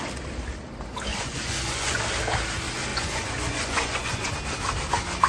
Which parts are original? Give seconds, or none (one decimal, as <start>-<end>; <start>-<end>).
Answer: 0.0-1.1; 2.0-2.9; 4.3-5.3